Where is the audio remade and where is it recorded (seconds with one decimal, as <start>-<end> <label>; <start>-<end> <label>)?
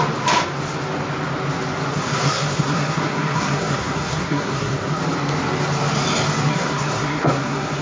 0.0-1.9 recorded; 1.9-5.0 remade; 5.0-6.5 recorded; 6.5-7.8 remade